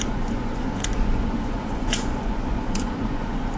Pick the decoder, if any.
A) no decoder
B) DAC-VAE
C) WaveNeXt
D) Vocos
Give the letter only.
D